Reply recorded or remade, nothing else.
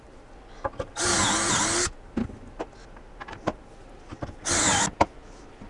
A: recorded